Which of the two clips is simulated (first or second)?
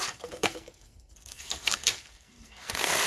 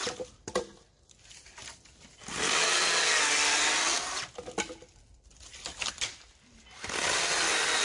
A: first